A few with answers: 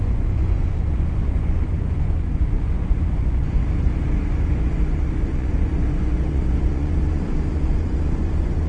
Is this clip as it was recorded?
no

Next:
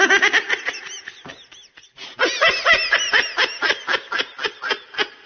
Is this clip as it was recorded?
yes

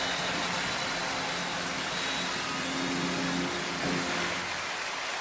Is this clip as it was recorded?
yes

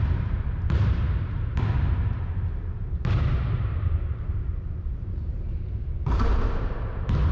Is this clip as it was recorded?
no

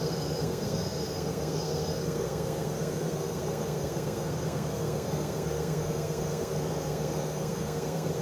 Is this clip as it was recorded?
no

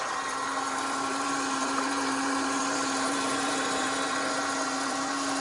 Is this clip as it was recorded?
no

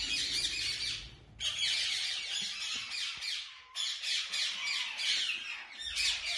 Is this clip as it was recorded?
yes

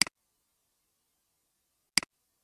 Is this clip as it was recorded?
yes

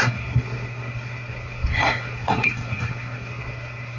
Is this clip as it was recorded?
no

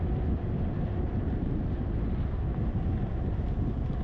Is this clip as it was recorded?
yes